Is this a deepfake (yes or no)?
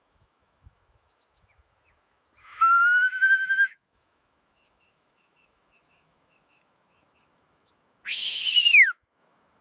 yes